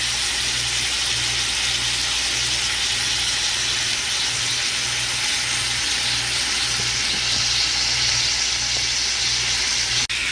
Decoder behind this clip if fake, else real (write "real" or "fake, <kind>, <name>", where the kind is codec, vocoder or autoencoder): real